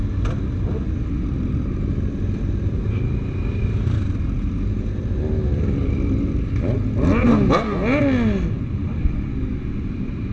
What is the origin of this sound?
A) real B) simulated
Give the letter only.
A